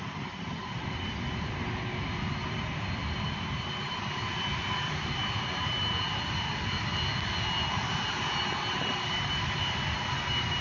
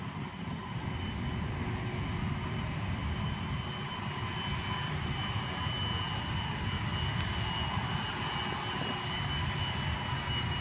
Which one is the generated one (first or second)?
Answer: first